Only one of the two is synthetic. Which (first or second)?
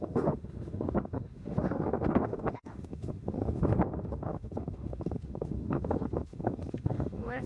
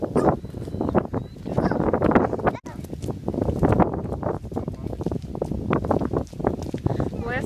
first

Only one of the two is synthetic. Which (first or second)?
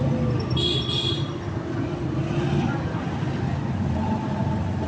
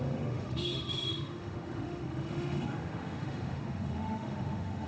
second